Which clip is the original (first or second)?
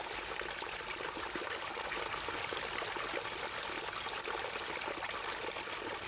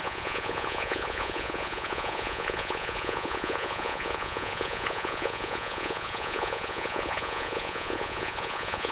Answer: first